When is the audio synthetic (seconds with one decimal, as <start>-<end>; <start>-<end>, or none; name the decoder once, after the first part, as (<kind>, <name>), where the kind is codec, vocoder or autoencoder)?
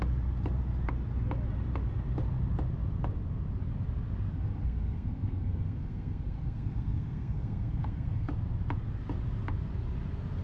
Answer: 4.3-8.3 (codec, SNAC)